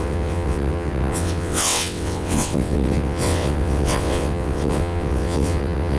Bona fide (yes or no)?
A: no